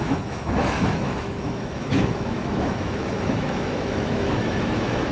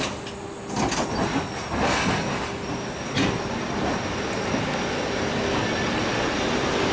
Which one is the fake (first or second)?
first